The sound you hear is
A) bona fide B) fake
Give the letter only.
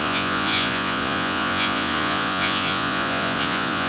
B